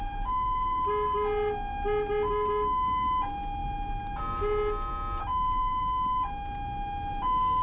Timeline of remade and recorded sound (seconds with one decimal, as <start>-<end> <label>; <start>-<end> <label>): 0.0-7.6 recorded